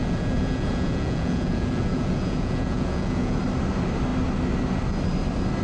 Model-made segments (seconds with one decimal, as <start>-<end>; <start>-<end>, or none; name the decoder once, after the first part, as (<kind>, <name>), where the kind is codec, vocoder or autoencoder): 0.0-3.4 (vocoder, Vocos)